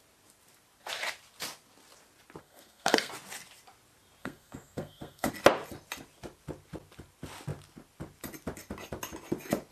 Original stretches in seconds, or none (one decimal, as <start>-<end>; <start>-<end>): 0.0-2.4; 3.1-4.2; 5.3-9.7